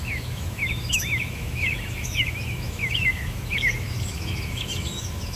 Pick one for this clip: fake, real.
fake